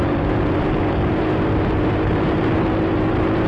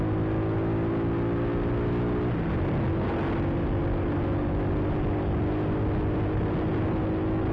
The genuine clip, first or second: second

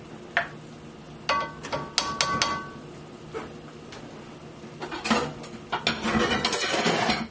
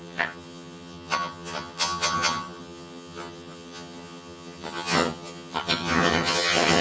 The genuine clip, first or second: first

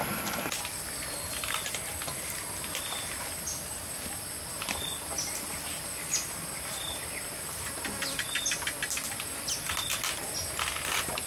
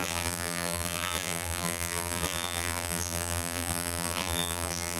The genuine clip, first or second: first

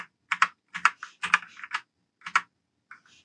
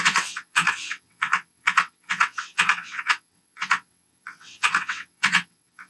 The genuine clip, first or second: first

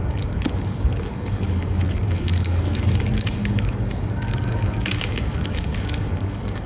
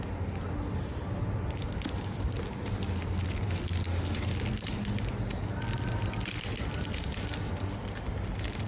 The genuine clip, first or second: second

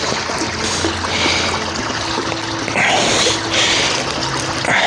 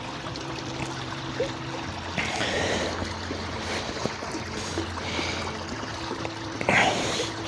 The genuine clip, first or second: first